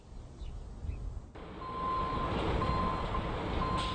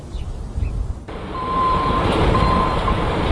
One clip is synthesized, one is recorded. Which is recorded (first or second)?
first